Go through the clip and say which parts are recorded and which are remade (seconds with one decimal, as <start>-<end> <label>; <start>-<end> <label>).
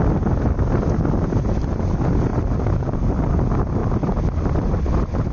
0.0-5.3 recorded